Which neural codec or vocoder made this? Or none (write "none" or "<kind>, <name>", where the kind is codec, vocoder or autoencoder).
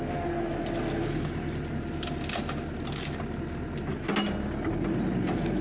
none